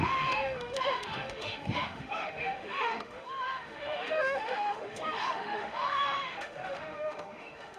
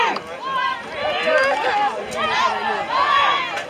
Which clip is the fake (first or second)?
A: first